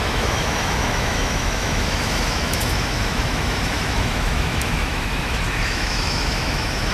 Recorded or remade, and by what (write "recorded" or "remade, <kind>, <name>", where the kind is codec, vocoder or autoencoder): remade, autoencoder, DAC-VAE